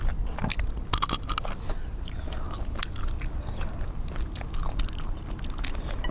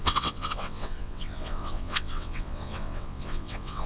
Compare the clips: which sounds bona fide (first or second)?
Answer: first